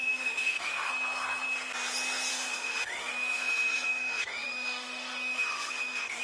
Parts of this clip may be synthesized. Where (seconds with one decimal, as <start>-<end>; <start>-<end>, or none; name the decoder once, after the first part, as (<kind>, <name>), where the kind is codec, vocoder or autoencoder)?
0.0-0.9 (autoencoder, DAC-VAE); 2.3-6.2